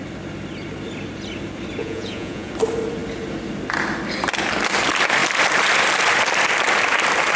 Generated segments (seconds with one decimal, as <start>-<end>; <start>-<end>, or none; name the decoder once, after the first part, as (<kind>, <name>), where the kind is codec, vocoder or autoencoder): 1.8-2.5 (vocoder, Vocos)